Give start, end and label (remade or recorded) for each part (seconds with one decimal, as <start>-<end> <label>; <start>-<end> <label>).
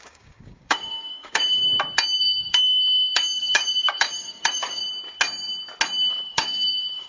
0.0-1.6 remade; 1.6-2.2 recorded; 2.2-4.8 remade; 4.8-6.1 recorded; 6.1-7.1 remade